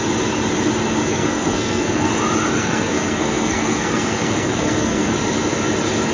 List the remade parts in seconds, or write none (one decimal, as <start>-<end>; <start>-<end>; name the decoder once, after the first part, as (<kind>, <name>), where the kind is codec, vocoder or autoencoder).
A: 1.1-2.1 (codec, SNAC); 2.6-5.1